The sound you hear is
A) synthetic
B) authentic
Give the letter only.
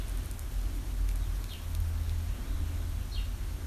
B